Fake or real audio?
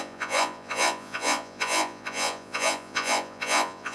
fake